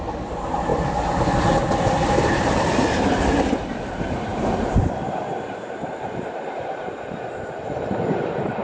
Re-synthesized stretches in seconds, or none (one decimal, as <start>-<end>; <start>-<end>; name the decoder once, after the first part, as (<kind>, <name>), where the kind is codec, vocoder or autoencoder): 0.0-0.7 (vocoder, BigVGAN v2); 2.0-8.6